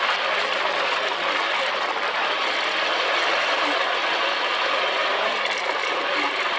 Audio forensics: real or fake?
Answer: real